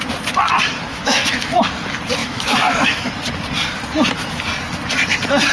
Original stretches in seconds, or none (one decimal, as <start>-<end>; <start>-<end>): 0.0-0.9; 1.7-2.2; 3.1-5.5